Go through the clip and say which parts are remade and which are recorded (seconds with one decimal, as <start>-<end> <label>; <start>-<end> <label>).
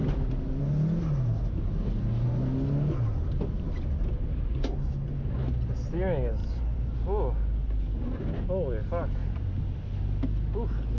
0.0-0.6 remade; 0.6-6.4 recorded; 6.4-7.8 remade; 7.8-9.2 recorded; 9.2-9.8 remade; 9.8-11.0 recorded